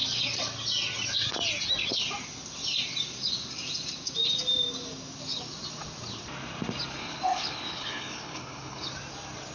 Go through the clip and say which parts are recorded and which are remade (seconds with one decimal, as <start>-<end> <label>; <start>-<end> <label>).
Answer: 0.0-7.0 recorded; 7.0-8.9 remade; 8.9-9.5 recorded